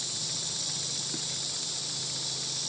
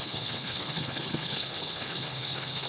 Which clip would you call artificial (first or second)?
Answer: second